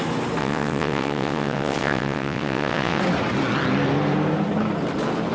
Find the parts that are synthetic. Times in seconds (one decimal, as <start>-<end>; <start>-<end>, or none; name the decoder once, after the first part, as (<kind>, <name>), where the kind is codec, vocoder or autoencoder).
0.4-3.0 (vocoder, WaveNeXt)

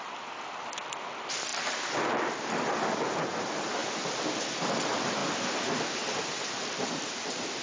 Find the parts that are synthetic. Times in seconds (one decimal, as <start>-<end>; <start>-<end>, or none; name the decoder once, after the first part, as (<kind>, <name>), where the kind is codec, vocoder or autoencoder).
0.0-1.5 (vocoder, BigVGAN v2); 3.2-3.8; 4.5-5.2; 6.0-7.6

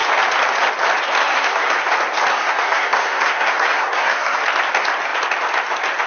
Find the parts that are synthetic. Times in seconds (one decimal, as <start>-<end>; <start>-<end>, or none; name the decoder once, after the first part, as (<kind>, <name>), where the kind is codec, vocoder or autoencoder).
1.2-1.8 (codec, SNAC); 2.3-4.4

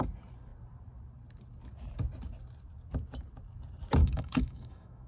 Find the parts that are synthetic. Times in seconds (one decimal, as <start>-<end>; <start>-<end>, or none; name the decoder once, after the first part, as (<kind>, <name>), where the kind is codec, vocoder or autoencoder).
4.0-5.1 (autoencoder, DAC-VAE)

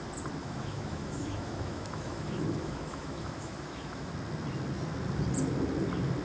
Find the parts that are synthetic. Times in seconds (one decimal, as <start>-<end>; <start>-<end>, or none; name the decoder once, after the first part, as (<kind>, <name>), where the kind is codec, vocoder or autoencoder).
0.4-4.1 (autoencoder, DAC-VAE)

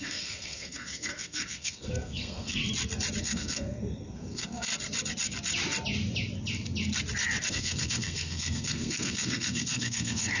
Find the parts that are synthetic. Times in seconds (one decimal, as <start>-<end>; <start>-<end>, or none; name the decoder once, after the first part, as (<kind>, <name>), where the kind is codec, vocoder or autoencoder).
0.0-2.6 (codec, SNAC); 3.2-4.7; 7.5-10.4

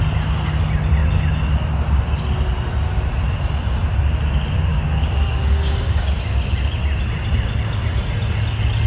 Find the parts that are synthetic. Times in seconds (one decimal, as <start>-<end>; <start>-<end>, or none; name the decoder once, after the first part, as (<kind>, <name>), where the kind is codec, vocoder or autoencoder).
4.7-6.0 (codec, DAC)